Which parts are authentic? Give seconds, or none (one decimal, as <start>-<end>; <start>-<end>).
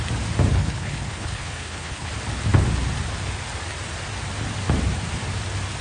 0.0-0.5; 2.1-5.8